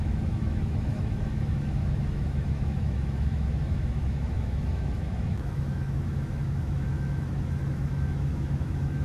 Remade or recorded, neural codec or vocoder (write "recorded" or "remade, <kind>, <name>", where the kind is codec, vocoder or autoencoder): remade, autoencoder, DAC-VAE